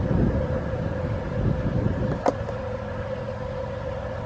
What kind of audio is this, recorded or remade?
recorded